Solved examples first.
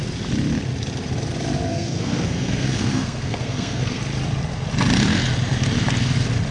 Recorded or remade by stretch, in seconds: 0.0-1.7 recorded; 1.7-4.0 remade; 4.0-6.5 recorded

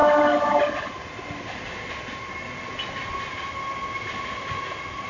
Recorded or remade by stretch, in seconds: 0.0-5.1 recorded

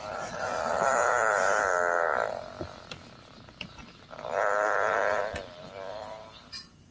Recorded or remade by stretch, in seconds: 0.0-6.9 recorded

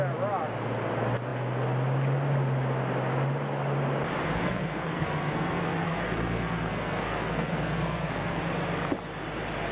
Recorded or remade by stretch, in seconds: 0.0-4.4 recorded; 4.4-8.4 remade; 8.4-9.7 recorded

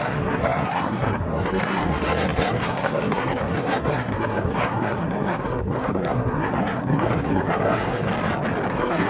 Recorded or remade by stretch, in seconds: 0.0-8.1 remade; 8.1-8.7 recorded; 8.7-9.1 remade

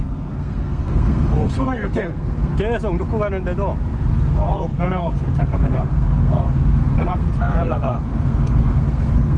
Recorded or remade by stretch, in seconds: 0.0-2.5 remade; 2.5-4.1 recorded; 4.1-9.4 remade